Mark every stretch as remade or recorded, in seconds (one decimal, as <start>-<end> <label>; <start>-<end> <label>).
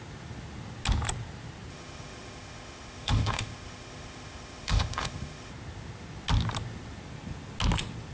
0.0-1.7 recorded; 1.7-5.5 remade; 5.5-8.1 recorded